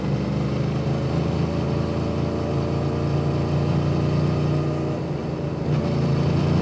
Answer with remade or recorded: recorded